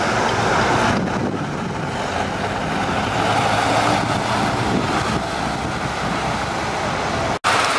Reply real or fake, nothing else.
real